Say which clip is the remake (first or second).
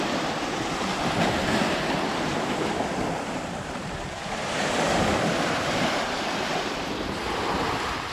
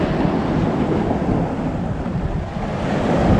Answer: first